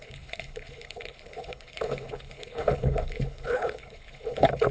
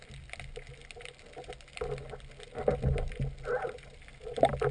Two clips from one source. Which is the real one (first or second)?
second